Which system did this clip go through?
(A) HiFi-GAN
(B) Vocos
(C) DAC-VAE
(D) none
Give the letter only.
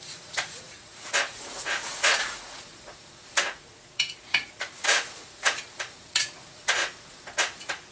B